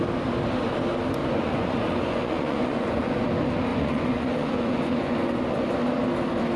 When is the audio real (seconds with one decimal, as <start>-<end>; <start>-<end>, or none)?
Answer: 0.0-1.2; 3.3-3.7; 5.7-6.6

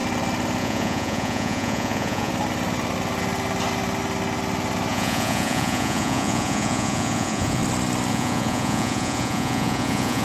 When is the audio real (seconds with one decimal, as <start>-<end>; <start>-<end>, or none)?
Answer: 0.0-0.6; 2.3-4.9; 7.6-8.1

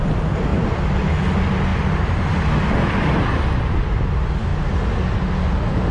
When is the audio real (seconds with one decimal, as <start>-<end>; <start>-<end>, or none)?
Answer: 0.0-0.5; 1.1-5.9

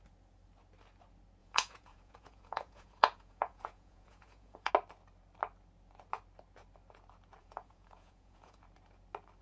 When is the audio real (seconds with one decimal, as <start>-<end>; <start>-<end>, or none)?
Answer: 0.0-1.4; 4.7-7.4; 8.6-9.4

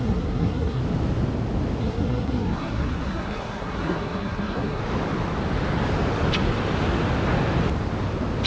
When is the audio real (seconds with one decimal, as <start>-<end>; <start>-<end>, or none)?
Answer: 0.8-1.8; 4.8-8.5

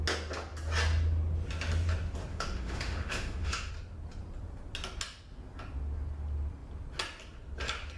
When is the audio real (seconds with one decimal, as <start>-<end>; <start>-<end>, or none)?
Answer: 0.0-2.3; 3.7-8.0

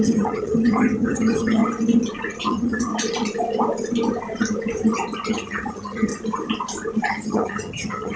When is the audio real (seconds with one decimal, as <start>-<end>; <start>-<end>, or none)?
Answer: 1.6-2.4; 2.9-5.3; 6.1-7.1

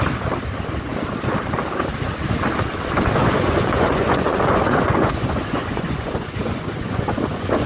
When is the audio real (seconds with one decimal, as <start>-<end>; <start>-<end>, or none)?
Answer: 0.0-3.2